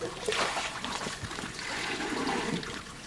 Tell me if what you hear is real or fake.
fake